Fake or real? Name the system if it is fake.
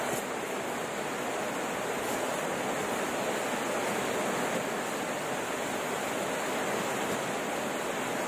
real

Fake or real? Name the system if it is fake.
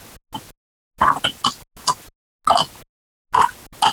real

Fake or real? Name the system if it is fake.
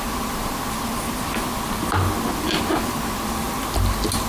real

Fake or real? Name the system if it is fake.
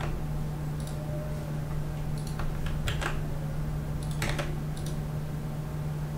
real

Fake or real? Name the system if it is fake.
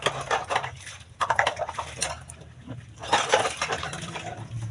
real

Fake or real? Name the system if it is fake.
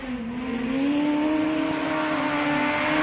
real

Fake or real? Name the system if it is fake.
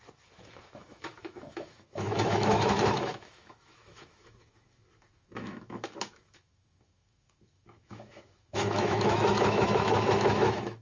fake, autoencoder, DAC-VAE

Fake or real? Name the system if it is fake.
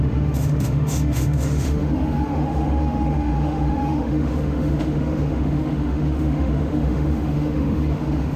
fake, autoencoder, DAC-VAE